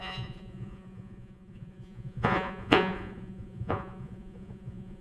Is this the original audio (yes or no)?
no